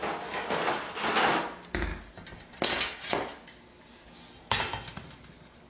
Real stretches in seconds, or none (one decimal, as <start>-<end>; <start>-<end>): 0.0-5.7